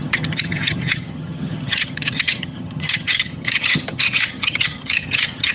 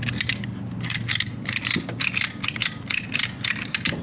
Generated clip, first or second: first